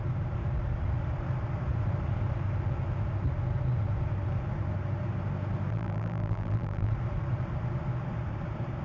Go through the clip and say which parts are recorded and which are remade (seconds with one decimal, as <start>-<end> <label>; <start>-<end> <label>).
0.0-5.7 recorded; 5.7-6.9 remade; 6.9-8.8 recorded